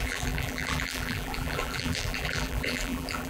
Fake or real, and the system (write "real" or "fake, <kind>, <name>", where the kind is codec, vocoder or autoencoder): fake, vocoder, BigVGAN v2